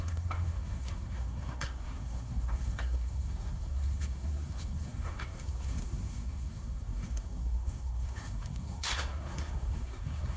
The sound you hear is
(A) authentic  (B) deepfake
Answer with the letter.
B